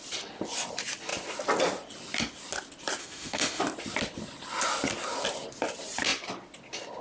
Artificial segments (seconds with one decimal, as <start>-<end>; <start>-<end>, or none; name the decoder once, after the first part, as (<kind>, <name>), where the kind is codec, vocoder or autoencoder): 3.0-3.6 (autoencoder, DAC-VAE)